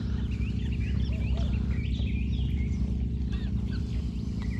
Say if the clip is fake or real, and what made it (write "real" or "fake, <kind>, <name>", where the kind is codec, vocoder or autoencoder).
real